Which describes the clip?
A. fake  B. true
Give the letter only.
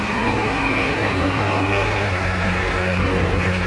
A